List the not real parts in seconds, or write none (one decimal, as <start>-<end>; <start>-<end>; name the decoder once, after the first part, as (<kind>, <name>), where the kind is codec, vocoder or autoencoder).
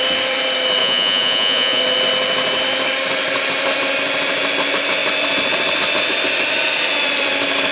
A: 0.8-1.8 (vocoder, Vocos)